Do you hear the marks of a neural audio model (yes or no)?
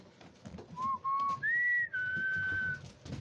no